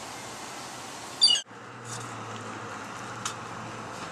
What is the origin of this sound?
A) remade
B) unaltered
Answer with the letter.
B